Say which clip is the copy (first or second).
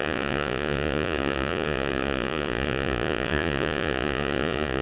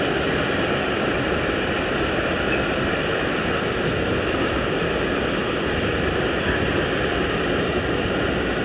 first